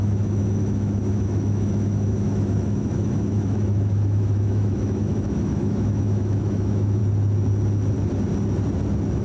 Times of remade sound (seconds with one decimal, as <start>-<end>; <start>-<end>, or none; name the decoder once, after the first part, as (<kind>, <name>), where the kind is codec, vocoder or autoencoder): 0.0-7.0 (autoencoder, DAC-VAE)